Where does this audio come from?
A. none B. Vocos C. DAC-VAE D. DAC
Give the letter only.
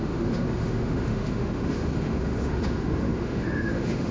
C